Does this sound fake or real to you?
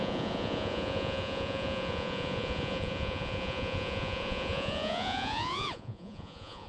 fake